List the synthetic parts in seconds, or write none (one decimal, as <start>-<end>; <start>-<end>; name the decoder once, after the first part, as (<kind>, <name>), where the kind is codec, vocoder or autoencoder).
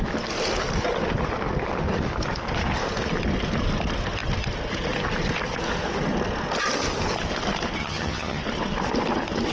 7.8-8.4 (vocoder, HiFi-GAN)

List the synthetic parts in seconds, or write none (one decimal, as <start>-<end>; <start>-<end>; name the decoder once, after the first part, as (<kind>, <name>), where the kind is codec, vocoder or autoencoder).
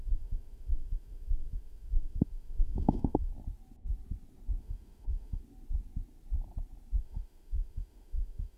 0.0-3.3 (autoencoder, DAC-VAE); 4.6-5.4; 7.0-8.6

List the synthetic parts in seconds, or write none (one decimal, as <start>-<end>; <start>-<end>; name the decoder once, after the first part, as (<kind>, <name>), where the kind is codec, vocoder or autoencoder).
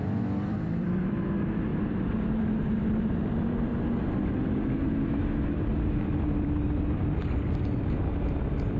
0.0-1.7 (vocoder, BigVGAN v2); 2.4-3.7; 5.5-8.8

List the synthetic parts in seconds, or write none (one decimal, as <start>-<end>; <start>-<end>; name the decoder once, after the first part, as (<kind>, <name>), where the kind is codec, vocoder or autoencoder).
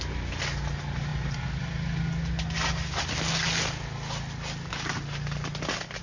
none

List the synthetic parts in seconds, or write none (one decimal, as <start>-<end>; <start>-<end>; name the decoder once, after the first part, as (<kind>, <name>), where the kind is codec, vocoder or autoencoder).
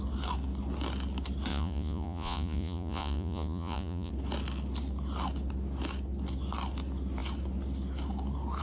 1.5-4.1 (vocoder, Vocos)